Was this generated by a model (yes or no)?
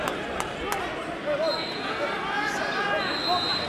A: no